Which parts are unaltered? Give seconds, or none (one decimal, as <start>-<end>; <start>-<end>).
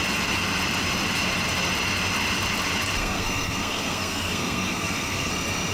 0.0-3.0; 5.3-5.7